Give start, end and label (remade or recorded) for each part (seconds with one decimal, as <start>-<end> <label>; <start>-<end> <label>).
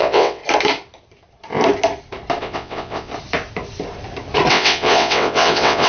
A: 0.0-0.4 remade; 0.4-2.4 recorded; 2.4-3.1 remade; 3.1-4.5 recorded; 4.5-5.9 remade